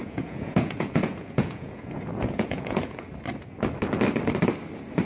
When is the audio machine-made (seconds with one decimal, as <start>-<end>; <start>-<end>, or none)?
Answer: 0.0-3.1